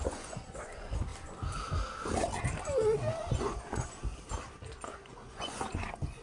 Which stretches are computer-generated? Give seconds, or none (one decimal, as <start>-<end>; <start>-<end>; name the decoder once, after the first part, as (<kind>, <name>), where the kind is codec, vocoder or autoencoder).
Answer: 0.0-1.1 (vocoder, Vocos); 3.2-4.1; 4.9-6.2